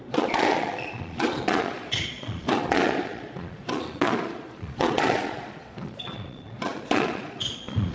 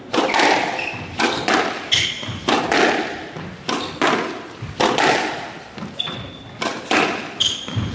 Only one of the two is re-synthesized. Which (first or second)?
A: first